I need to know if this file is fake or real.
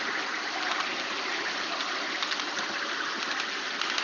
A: real